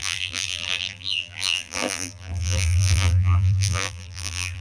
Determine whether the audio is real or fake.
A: fake